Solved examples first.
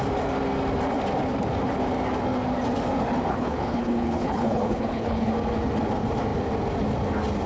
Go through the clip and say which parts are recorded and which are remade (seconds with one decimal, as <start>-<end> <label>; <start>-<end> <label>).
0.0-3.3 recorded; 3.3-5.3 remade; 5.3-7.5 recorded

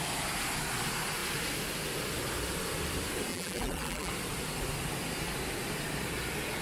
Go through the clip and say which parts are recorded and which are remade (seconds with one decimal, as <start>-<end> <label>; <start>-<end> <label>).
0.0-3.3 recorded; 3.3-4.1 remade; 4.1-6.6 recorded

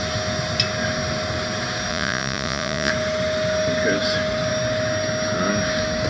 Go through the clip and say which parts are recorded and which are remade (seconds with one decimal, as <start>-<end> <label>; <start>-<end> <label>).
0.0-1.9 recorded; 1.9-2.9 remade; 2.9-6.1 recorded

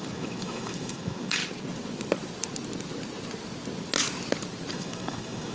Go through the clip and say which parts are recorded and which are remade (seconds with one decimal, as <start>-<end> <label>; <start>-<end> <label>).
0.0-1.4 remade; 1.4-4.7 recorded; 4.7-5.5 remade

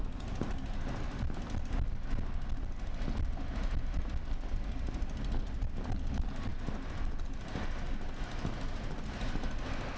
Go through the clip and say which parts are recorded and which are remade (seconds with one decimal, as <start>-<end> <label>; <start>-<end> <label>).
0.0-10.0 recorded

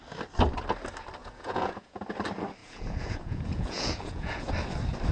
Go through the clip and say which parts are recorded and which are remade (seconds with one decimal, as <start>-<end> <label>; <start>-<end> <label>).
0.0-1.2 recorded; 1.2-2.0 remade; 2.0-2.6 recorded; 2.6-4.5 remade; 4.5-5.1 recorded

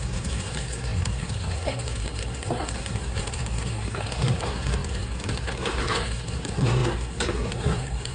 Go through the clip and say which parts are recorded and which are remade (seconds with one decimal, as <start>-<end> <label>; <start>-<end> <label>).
0.0-8.1 remade